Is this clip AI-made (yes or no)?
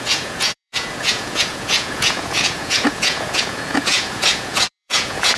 yes